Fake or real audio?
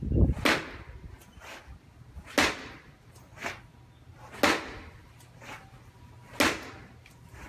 real